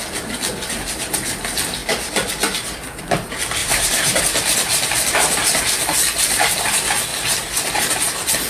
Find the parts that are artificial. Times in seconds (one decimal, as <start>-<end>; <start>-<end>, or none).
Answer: 3.6-4.2; 7.1-7.9